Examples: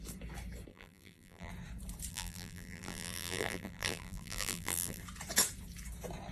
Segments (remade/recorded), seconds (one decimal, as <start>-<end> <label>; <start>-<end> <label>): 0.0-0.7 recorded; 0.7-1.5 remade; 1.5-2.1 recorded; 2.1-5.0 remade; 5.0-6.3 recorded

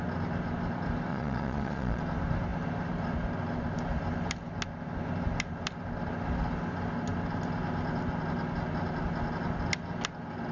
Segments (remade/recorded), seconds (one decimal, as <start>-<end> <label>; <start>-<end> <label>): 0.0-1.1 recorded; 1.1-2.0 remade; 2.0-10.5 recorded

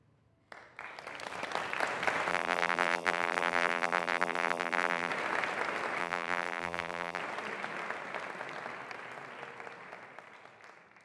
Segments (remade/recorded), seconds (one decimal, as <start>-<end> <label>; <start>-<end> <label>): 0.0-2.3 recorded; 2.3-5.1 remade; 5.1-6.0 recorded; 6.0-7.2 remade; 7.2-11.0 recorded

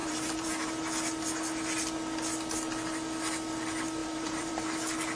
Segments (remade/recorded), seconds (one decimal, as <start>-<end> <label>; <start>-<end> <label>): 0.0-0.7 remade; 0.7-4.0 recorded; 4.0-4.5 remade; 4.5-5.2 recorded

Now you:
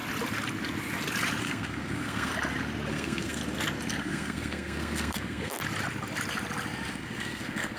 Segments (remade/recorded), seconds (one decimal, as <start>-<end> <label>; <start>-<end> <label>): 0.0-1.4 recorded; 1.4-2.3 remade; 2.3-2.9 recorded; 2.9-3.4 remade; 3.4-4.0 recorded; 4.0-5.5 remade; 5.5-6.9 recorded; 6.9-7.8 remade

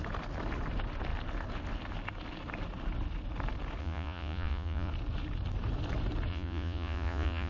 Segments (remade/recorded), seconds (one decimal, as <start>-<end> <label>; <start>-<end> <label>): 0.0-3.8 recorded; 3.8-4.9 remade; 4.9-6.3 recorded; 6.3-7.5 remade